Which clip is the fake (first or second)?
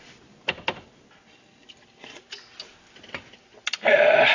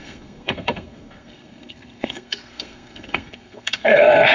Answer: second